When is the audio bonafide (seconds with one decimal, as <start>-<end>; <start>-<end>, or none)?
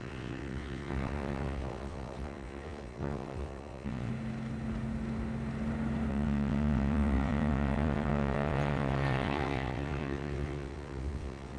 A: 4.1-6.1